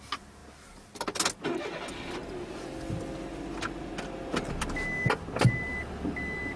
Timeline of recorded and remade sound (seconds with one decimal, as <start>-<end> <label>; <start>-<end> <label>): 0.0-6.6 recorded